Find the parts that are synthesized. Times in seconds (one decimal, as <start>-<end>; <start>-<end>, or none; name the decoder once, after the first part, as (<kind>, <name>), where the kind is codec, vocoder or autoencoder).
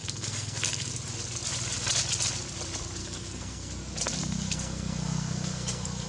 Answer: 0.0-0.9 (codec, SNAC); 3.0-3.7; 4.2-6.1